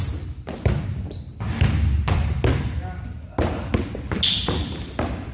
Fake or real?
real